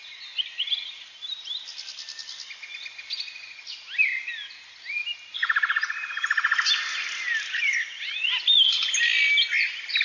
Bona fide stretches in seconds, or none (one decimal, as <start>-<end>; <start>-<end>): 0.0-10.0